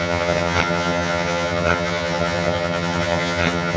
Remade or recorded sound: remade